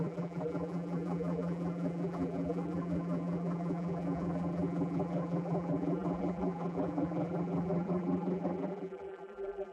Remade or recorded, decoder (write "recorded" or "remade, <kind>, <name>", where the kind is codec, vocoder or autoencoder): remade, vocoder, BigVGAN v2